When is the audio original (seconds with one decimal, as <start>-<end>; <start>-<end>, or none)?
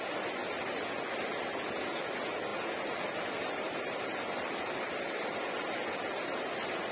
0.0-6.9